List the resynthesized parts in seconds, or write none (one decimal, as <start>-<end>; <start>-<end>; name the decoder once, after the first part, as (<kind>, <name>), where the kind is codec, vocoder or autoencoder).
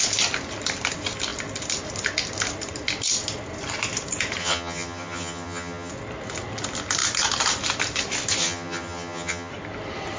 4.4-5.9 (vocoder, HiFi-GAN); 8.4-9.5